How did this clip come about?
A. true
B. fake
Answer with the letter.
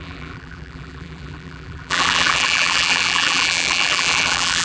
B